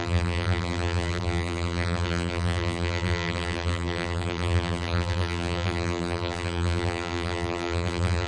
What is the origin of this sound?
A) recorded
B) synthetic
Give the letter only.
B